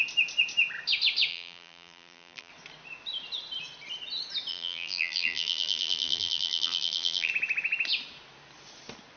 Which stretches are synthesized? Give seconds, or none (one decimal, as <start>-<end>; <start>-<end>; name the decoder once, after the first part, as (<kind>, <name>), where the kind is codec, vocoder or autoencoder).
1.3-2.5 (vocoder, BigVGAN v2); 4.5-7.3